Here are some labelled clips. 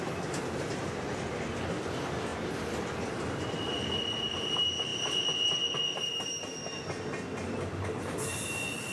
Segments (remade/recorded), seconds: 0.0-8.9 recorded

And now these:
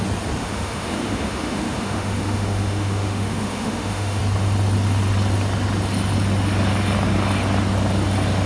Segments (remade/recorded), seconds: 0.0-0.4 recorded; 0.4-4.2 remade; 4.2-8.5 recorded

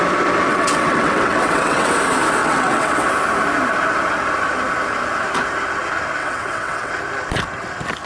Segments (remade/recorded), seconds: 0.0-0.5 recorded; 0.5-1.9 remade; 1.9-2.4 recorded; 2.4-3.1 remade; 3.1-6.2 recorded; 6.2-6.9 remade; 6.9-8.1 recorded

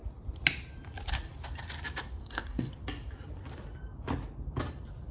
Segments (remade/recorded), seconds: 0.0-2.2 recorded; 2.2-2.7 remade; 2.7-5.1 recorded

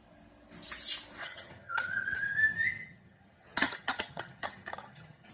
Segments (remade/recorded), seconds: 0.0-1.2 recorded; 1.2-2.4 remade; 2.4-2.8 recorded; 2.8-5.3 remade

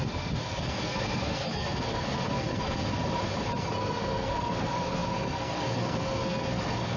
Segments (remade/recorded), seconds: 0.0-3.0 remade; 3.0-3.6 recorded; 3.6-7.0 remade

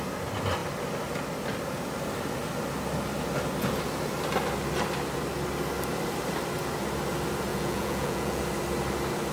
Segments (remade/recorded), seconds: 0.0-7.5 recorded; 7.5-8.4 remade; 8.4-9.3 recorded